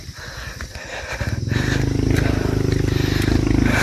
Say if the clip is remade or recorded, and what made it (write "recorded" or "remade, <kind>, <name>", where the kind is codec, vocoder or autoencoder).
recorded